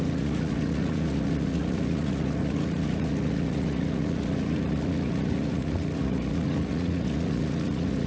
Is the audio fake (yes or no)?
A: yes